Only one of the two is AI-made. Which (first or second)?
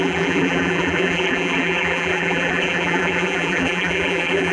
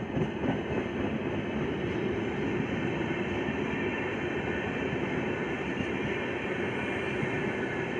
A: first